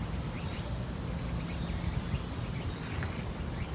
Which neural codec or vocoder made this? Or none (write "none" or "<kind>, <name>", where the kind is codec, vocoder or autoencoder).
none